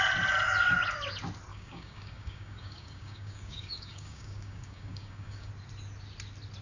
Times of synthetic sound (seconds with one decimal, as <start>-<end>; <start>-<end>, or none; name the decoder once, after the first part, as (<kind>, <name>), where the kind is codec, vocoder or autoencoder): 1.5-5.5 (codec, DAC)